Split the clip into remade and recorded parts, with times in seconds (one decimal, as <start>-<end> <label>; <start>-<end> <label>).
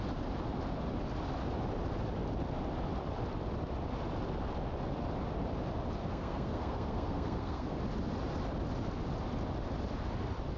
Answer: 0.0-6.0 recorded; 6.0-7.8 remade; 7.8-10.6 recorded